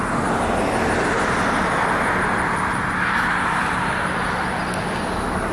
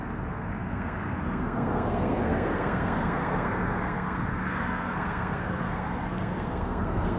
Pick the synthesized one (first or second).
second